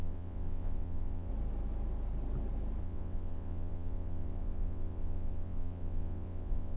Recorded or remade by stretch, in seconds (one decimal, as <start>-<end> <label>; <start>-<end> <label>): 0.0-1.3 remade; 1.3-2.8 recorded; 2.8-6.8 remade